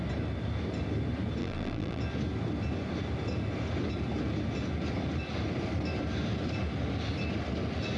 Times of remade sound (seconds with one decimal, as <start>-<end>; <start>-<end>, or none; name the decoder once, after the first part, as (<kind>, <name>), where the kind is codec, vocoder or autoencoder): 1.4-2.0 (vocoder, BigVGAN v2)